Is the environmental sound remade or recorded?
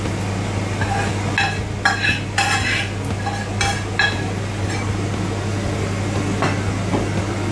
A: recorded